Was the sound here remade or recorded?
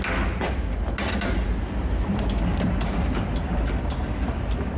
recorded